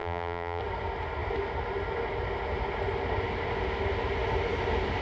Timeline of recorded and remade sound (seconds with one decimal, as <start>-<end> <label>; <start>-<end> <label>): 0.0-0.6 remade; 0.6-5.0 recorded